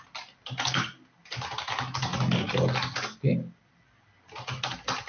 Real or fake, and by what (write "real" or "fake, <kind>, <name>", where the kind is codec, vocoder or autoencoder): real